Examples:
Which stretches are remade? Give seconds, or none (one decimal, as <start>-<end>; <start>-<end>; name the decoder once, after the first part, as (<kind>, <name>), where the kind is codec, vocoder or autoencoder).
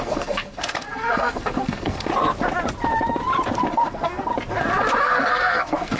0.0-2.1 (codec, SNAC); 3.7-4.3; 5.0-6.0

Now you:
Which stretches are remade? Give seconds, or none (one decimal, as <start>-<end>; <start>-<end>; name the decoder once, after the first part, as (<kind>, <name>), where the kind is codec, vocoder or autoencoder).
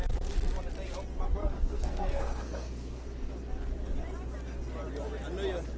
1.4-3.3 (codec, SNAC)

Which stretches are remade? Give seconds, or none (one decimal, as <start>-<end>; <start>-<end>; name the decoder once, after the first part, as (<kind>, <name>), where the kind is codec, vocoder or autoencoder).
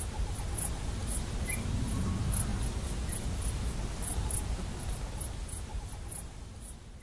none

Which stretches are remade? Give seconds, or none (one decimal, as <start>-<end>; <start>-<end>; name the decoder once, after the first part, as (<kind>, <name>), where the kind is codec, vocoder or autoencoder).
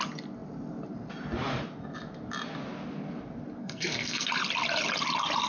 3.6-4.3 (codec, SNAC)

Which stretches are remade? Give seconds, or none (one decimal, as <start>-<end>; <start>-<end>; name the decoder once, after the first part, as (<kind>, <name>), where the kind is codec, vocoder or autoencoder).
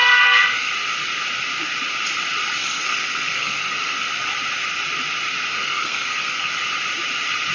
0.0-0.7 (codec, SNAC); 2.6-4.1; 5.5-6.5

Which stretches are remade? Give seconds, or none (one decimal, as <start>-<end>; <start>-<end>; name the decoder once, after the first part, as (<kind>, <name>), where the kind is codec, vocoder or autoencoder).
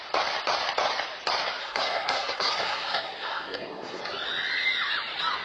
1.6-4.0 (codec, SNAC)